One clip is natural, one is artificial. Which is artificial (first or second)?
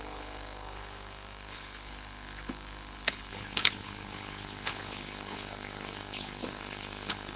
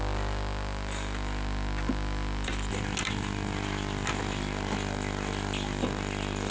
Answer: first